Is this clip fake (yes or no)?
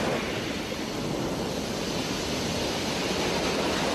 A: no